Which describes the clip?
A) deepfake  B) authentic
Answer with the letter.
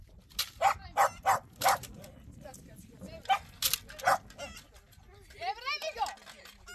B